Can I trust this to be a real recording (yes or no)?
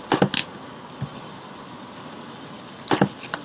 yes